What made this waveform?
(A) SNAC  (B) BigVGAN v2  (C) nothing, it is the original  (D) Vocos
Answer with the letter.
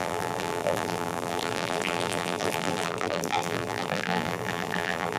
B